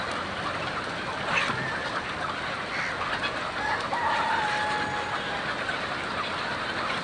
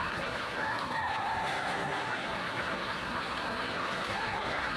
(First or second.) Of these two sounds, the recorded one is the first